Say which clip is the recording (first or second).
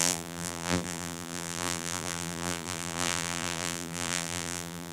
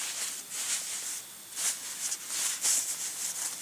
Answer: second